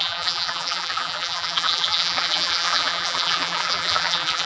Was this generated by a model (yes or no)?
yes